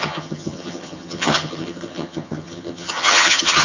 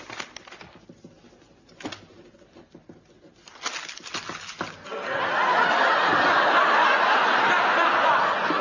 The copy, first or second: first